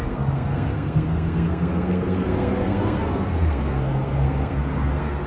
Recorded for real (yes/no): no